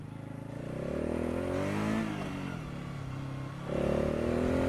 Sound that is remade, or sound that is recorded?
recorded